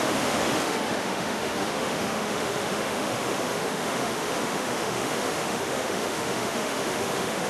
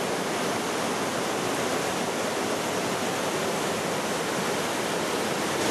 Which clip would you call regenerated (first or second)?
first